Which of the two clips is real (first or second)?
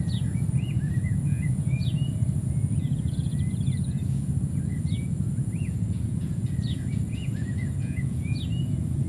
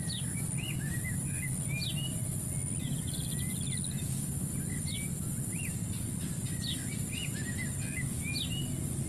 second